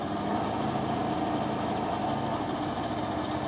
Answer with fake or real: real